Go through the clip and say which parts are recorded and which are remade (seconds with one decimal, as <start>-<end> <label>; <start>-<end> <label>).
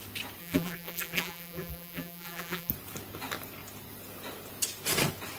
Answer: 0.0-0.4 recorded; 0.4-2.7 remade; 2.7-5.4 recorded